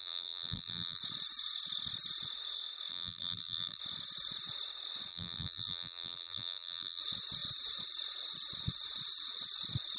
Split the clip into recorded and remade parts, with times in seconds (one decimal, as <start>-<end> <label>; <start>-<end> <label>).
0.0-1.0 remade; 1.0-2.9 recorded; 2.9-3.8 remade; 3.8-5.1 recorded; 5.1-7.0 remade; 7.0-10.0 recorded